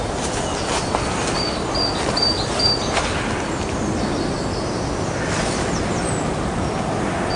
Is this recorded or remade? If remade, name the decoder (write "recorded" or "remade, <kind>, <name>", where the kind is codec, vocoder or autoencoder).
recorded